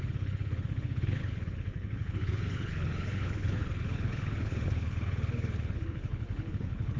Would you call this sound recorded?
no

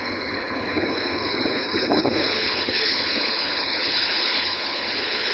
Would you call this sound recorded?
no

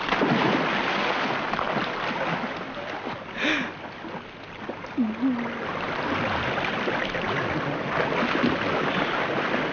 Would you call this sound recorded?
yes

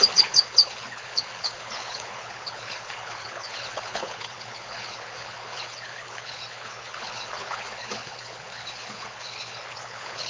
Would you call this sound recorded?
no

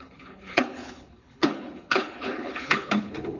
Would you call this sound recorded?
no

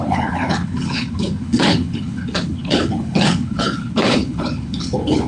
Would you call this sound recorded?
no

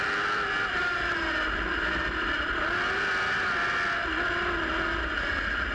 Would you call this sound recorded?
yes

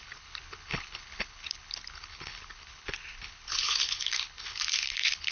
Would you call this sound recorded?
no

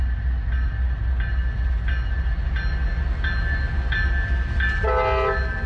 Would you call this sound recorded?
yes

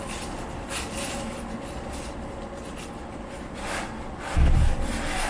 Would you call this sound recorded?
yes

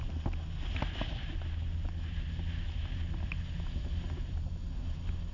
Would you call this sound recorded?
yes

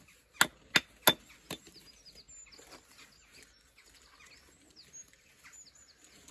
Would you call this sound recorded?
yes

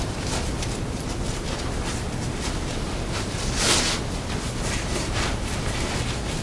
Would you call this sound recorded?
yes